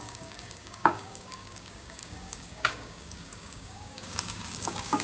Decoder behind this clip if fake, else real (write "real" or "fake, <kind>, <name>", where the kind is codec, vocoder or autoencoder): fake, codec, DAC